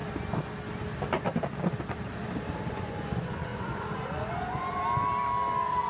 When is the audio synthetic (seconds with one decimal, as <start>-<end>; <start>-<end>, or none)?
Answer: 2.7-4.8